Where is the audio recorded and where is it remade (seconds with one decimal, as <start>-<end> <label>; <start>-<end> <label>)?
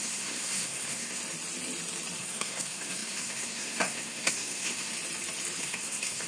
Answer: 0.0-1.2 remade; 1.2-2.2 recorded; 2.2-4.9 remade; 4.9-5.6 recorded; 5.6-6.3 remade